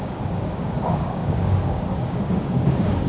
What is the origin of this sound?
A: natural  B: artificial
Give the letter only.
B